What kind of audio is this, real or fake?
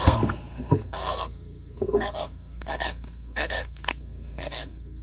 fake